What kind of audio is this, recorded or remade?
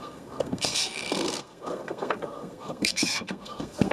remade